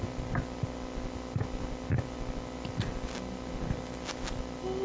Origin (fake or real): real